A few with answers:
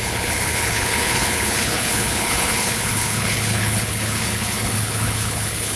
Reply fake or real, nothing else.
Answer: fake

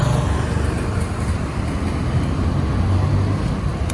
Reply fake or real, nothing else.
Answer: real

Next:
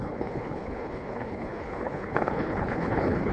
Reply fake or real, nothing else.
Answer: fake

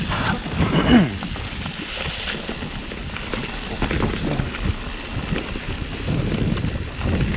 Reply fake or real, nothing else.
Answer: real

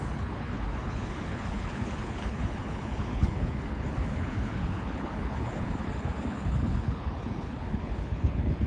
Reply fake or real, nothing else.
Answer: fake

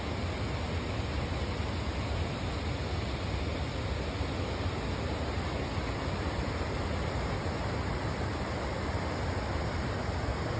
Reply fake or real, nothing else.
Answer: real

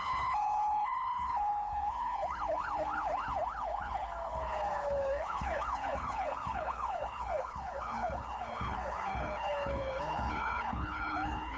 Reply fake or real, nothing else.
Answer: fake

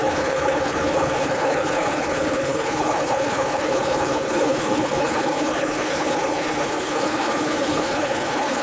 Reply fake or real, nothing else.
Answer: fake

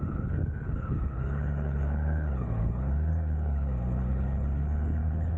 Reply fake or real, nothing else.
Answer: fake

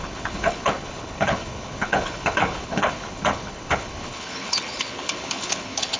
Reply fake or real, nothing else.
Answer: fake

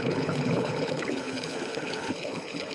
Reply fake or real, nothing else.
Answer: fake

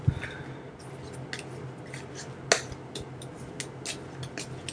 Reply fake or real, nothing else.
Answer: real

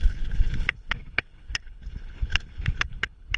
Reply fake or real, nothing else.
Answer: fake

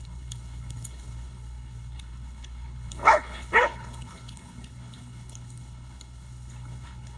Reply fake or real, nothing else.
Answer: fake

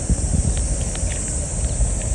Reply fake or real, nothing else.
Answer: real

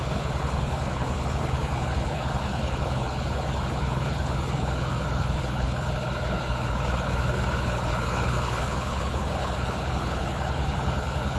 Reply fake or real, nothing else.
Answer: fake